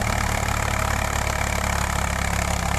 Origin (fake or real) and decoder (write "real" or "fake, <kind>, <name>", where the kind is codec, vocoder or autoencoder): real